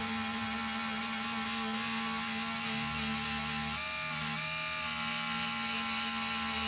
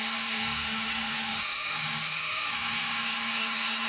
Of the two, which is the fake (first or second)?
second